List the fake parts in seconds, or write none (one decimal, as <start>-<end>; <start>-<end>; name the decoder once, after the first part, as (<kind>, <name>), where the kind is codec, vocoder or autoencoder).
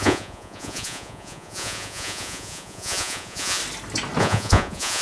0.0-3.6 (vocoder, Vocos); 4.2-5.0